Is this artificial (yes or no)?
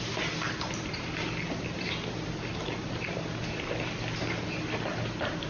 no